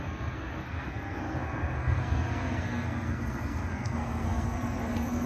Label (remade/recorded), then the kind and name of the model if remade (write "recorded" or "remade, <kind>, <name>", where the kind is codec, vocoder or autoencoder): remade, codec, SNAC